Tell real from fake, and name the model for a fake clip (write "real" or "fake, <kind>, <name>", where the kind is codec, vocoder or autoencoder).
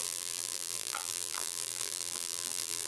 fake, vocoder, BigVGAN v2